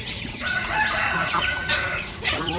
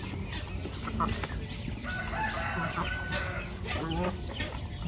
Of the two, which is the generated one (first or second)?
first